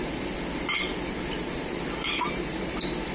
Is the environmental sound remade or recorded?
remade